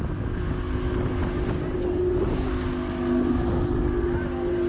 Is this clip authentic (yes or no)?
yes